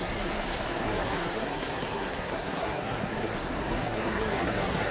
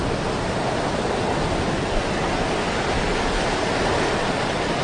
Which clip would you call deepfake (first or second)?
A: first